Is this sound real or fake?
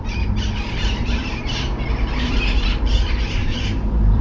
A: fake